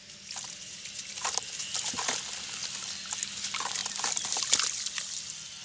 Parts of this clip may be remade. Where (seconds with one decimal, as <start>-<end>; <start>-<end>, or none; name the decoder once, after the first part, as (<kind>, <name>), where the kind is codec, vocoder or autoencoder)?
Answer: 1.1-2.1 (vocoder, BigVGAN v2); 2.6-3.1